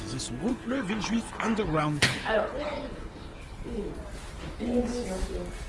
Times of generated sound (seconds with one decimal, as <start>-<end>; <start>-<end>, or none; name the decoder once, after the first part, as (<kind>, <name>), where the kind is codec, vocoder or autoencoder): 0.5-3.9 (codec, HILCodec)